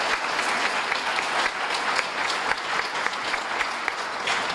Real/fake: fake